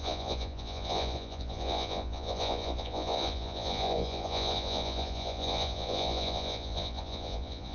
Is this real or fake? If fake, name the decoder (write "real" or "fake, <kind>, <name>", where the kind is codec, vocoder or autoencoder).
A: fake, vocoder, Vocos